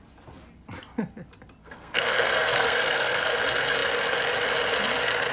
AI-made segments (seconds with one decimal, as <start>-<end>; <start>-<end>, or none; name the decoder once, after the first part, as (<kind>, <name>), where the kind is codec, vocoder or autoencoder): 1.6-3.4 (codec, SNAC)